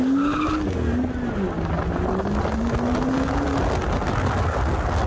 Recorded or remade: recorded